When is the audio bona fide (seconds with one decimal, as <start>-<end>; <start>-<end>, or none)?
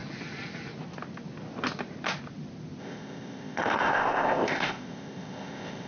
0.0-2.8